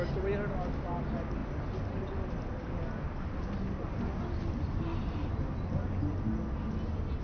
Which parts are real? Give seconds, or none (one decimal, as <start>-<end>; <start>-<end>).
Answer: 0.0-7.2